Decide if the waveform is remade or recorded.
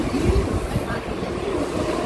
recorded